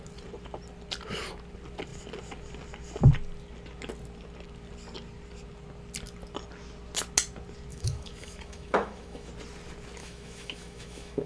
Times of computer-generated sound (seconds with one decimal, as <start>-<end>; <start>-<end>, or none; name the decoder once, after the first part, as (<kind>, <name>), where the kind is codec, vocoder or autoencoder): 7.7-9.3 (autoencoder, DAC-VAE); 10.0-11.3